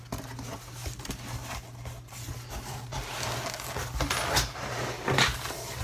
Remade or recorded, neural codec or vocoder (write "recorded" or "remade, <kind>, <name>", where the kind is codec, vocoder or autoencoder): recorded